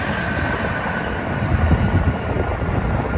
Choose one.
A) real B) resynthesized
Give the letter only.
A